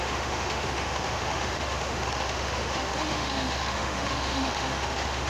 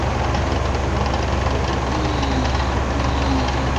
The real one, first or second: second